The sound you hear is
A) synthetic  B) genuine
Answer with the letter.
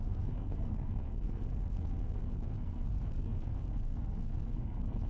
A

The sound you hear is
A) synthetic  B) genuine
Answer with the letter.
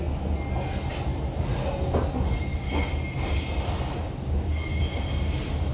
B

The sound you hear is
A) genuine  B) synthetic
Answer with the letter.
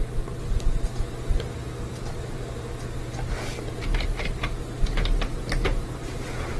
B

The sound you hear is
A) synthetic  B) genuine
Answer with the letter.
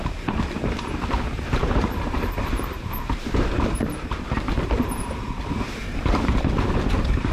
A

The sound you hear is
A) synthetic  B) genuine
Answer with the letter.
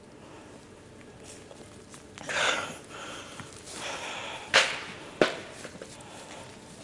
B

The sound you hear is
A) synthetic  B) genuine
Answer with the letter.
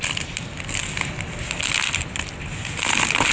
B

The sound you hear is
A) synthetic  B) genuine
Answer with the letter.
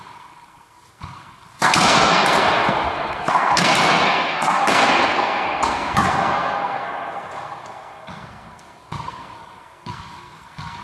A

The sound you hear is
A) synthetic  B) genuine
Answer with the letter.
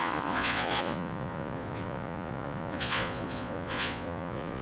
A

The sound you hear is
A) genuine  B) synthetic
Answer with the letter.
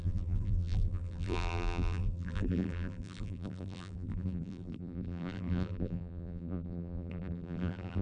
B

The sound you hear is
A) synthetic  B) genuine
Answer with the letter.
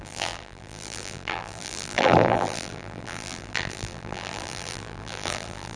A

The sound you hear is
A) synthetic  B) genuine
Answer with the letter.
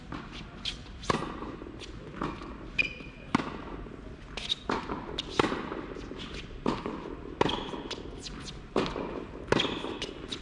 B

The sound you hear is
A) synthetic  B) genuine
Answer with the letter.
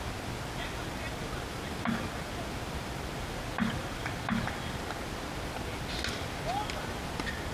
B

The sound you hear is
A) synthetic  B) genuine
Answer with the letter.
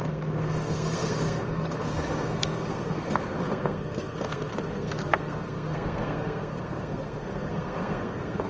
A